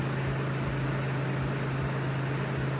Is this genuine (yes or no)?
yes